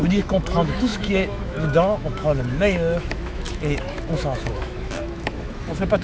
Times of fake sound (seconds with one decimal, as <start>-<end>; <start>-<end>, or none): 0.0-6.0